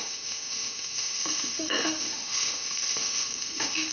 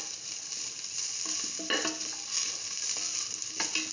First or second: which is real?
second